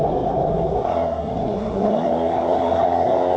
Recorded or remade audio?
remade